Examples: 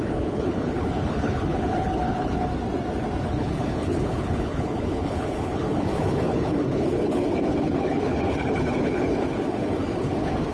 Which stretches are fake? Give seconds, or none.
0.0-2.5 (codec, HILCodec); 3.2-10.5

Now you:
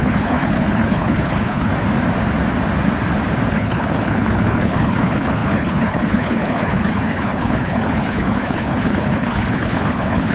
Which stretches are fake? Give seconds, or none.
0.0-1.7 (codec, HILCodec); 3.5-10.3

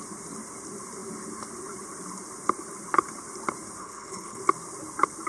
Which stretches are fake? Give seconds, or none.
3.8-4.4 (codec, HILCodec)

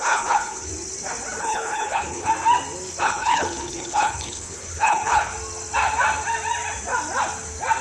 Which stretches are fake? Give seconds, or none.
0.0-0.7 (codec, HILCodec); 1.4-2.3; 3.0-5.3

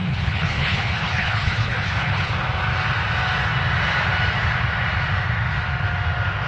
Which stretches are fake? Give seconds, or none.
0.0-2.3 (codec, HILCodec)

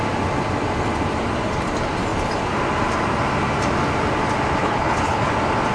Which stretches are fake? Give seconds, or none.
4.6-5.3 (codec, HILCodec)